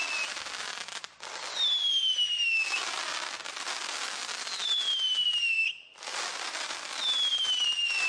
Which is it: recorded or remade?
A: recorded